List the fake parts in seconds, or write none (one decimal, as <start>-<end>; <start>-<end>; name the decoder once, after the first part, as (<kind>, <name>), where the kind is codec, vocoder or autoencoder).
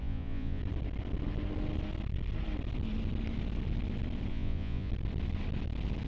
0.0-0.6 (vocoder, Vocos); 4.3-4.9